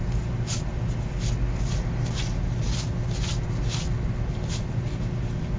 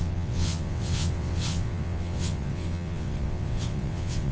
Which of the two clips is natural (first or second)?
first